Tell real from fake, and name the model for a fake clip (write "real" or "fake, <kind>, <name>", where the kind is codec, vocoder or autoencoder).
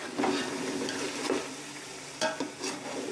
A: real